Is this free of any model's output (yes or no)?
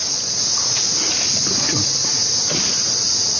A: yes